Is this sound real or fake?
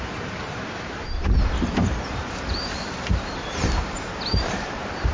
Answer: fake